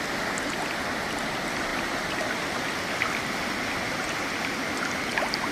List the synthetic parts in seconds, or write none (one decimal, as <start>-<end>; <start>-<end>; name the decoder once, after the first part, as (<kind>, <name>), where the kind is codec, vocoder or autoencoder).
none